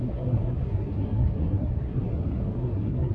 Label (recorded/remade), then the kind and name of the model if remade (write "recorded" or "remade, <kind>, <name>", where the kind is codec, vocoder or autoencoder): remade, codec, SNAC